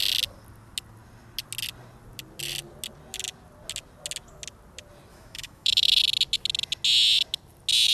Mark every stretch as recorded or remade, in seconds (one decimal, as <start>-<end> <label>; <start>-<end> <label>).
0.0-5.1 recorded; 5.1-6.0 remade; 6.0-7.9 recorded